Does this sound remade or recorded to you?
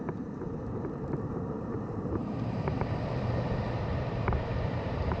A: remade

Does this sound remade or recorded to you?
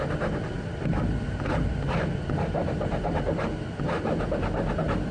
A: recorded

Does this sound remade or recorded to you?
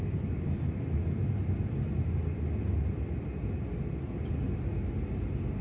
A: recorded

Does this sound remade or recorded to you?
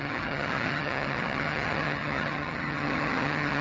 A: remade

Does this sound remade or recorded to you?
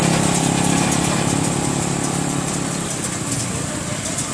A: remade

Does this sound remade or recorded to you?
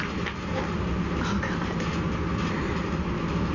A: recorded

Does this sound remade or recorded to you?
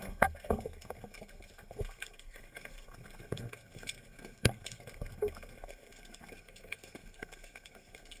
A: remade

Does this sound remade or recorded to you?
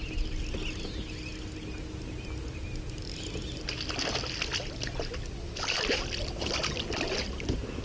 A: recorded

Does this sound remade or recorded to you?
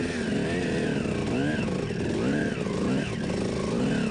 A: recorded